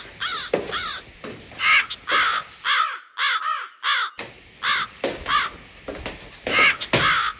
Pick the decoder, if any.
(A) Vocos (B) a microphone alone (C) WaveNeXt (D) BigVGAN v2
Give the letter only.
B